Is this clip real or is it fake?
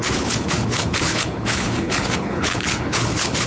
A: fake